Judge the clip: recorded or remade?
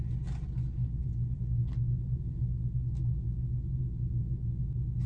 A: recorded